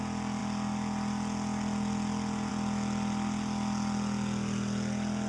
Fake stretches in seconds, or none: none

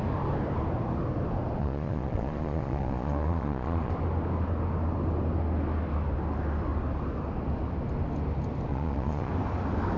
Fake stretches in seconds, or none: 1.6-3.9 (vocoder, Vocos); 8.7-9.3

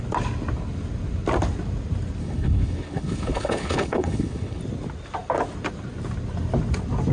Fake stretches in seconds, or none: 2.2-4.6 (codec, HILCodec)

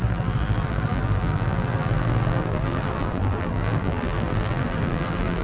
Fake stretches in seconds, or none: 0.0-5.4 (vocoder, BigVGAN v2)

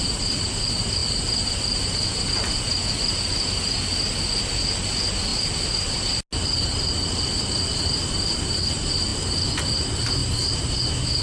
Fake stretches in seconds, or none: none